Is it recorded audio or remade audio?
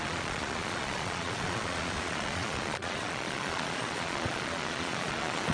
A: remade